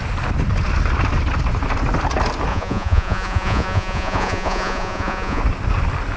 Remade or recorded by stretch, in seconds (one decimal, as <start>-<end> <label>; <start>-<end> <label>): 0.0-2.5 recorded; 2.5-5.4 remade; 5.4-6.2 recorded